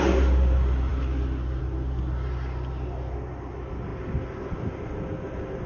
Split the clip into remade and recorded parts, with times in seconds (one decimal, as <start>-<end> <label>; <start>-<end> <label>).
0.0-5.7 recorded